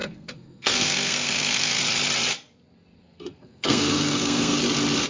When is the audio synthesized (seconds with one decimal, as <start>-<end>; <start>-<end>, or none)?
0.0-1.8; 3.0-4.6